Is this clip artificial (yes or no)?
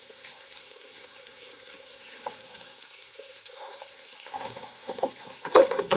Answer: yes